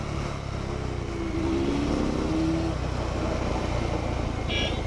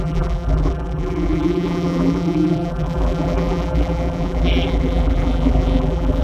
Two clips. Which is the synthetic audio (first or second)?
second